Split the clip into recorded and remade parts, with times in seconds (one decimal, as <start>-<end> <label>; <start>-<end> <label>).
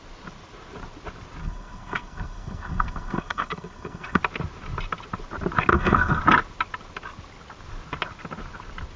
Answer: 0.0-1.4 recorded; 1.4-4.2 remade; 4.2-5.7 recorded; 5.7-6.2 remade; 6.2-9.0 recorded